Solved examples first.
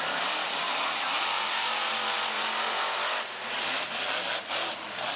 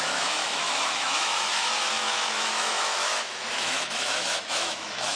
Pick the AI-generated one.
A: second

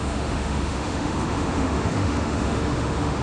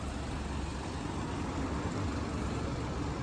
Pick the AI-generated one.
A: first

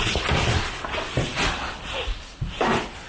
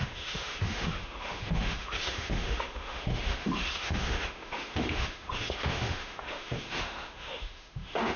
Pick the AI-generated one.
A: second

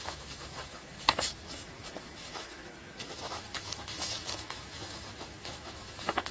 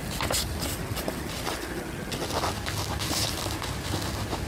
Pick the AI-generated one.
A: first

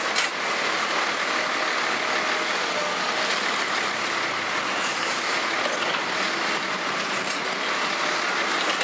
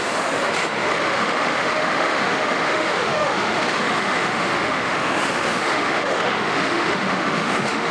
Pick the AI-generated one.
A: second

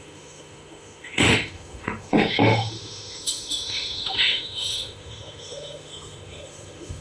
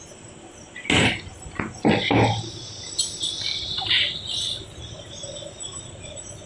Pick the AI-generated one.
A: first